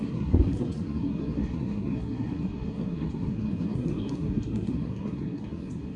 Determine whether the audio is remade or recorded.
remade